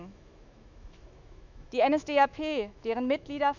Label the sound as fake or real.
fake